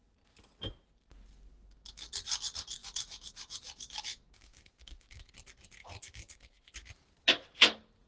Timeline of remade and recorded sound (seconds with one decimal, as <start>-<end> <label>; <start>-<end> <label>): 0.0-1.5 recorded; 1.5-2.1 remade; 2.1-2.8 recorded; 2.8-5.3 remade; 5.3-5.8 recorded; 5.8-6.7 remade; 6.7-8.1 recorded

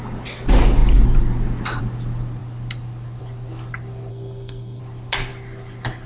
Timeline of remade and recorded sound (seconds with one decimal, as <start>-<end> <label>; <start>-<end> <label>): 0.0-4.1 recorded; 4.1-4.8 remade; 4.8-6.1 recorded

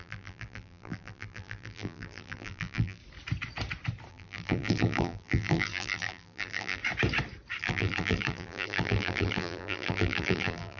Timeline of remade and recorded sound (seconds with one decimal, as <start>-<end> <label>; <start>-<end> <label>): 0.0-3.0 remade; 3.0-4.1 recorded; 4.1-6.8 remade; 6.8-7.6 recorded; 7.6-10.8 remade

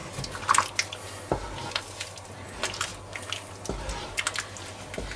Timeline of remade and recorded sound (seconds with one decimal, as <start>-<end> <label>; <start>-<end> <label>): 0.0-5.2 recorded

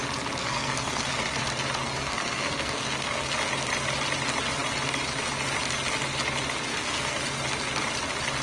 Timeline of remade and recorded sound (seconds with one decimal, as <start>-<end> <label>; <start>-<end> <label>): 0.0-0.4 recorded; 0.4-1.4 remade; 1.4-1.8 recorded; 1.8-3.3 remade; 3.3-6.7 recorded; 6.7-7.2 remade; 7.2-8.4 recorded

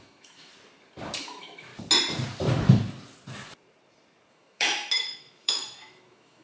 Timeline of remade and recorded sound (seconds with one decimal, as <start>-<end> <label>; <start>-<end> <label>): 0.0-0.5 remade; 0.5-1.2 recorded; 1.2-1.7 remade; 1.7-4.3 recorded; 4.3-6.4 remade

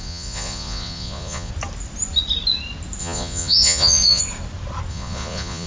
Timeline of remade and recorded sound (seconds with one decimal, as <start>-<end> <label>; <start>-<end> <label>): 0.0-1.5 remade; 1.5-3.0 recorded; 3.0-4.2 remade; 4.2-4.9 recorded; 4.9-5.7 remade

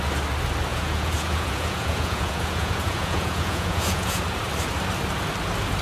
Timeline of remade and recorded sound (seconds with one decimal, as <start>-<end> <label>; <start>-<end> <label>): 0.0-0.7 recorded; 0.7-4.2 remade; 4.2-5.8 recorded